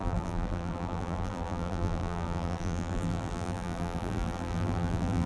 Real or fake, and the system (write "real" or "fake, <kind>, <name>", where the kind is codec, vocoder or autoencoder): fake, vocoder, BigVGAN v2